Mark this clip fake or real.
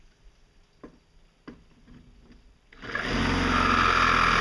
real